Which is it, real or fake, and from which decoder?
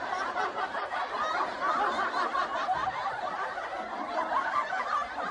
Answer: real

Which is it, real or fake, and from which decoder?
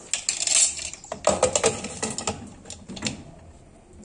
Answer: real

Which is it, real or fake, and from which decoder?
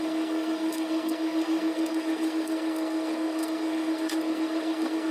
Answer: fake, codec, SNAC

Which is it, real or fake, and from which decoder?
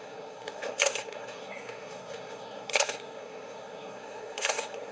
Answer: fake, codec, SNAC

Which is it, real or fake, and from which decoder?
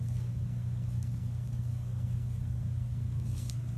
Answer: fake, codec, SNAC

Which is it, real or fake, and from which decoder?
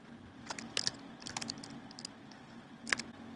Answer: real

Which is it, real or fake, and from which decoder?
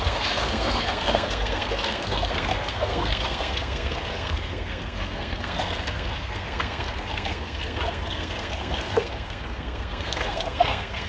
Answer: fake, codec, SNAC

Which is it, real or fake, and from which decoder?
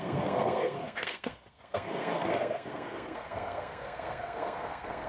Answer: fake, codec, SNAC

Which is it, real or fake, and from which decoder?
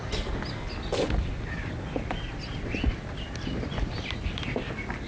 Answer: real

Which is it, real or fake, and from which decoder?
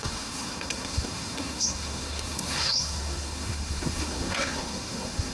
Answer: fake, codec, SNAC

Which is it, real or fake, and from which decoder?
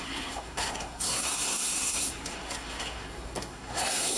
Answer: fake, codec, SNAC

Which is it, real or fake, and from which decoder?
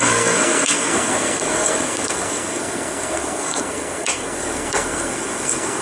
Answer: fake, codec, SNAC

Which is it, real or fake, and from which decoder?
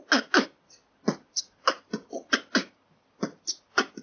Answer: real